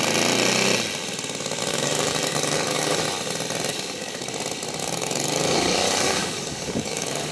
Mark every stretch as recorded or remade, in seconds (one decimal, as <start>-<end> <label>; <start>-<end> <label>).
0.0-1.7 recorded; 1.7-3.0 remade; 3.0-3.7 recorded; 3.7-4.3 remade; 4.3-4.8 recorded; 4.8-7.3 remade